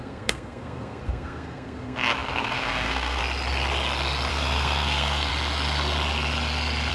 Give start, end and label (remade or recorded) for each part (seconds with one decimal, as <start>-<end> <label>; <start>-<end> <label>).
0.0-3.2 remade; 3.2-4.3 recorded; 4.3-5.3 remade; 5.3-6.9 recorded